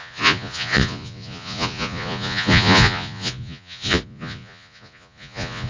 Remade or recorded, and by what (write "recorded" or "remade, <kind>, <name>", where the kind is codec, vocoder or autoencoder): remade, vocoder, Vocos